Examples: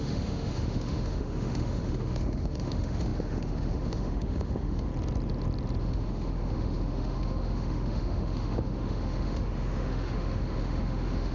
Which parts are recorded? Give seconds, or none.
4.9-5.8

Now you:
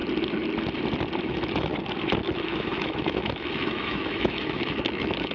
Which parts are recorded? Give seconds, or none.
0.0-1.2; 1.7-2.2

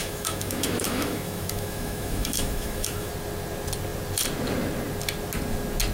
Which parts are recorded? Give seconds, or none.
3.1-5.9

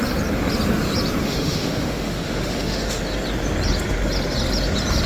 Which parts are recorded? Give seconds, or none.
0.0-1.2; 3.0-5.1

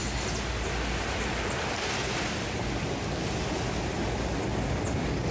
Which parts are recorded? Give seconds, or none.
0.0-5.3